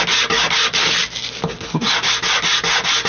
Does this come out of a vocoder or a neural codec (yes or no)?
no